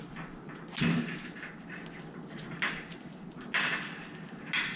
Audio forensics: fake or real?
real